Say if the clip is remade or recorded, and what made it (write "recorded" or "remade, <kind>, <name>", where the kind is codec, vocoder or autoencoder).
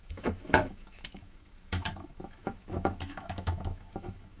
remade, autoencoder, DAC-VAE